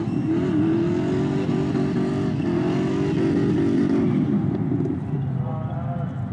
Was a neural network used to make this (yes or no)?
no